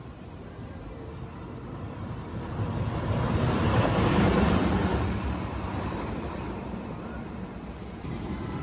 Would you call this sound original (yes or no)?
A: no